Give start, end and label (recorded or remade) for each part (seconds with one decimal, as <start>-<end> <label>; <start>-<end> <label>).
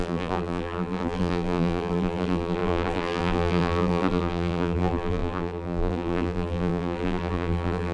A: 0.0-7.9 remade